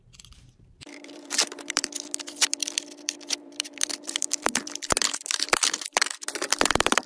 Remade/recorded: remade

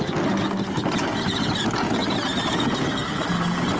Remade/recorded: recorded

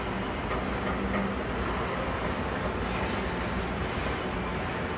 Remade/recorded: recorded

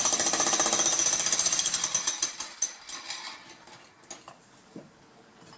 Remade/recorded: recorded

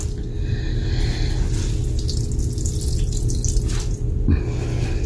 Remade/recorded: recorded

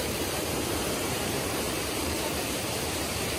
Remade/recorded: remade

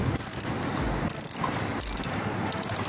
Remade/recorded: recorded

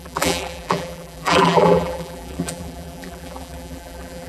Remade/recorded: remade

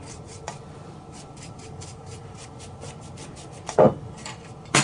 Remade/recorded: remade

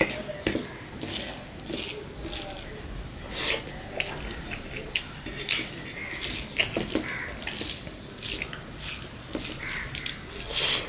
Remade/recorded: recorded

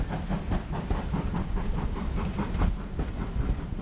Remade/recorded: remade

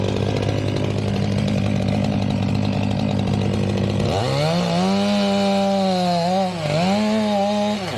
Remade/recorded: recorded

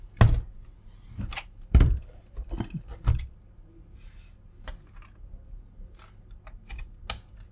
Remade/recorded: recorded